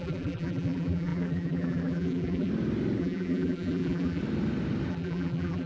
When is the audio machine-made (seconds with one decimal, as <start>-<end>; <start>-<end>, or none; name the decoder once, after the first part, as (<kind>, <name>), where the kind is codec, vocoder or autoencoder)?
0.0-2.5 (vocoder, BigVGAN v2); 3.0-4.2; 4.9-5.7